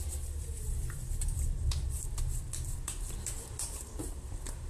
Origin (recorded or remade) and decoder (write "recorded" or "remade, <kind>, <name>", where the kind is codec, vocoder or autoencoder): remade, vocoder, BigVGAN v2